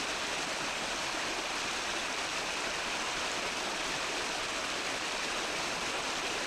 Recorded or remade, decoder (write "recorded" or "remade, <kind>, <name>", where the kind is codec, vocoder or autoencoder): recorded